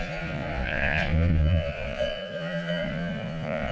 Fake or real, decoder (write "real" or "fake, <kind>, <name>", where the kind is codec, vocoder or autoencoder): fake, vocoder, Vocos